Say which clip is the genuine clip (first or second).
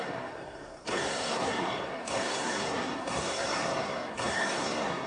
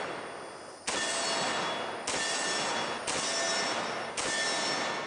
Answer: second